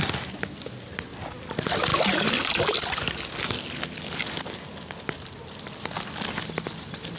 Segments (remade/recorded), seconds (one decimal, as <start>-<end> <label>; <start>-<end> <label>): 0.0-7.2 recorded